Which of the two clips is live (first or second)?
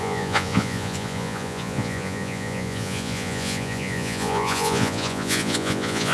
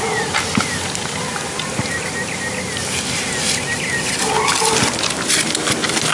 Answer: second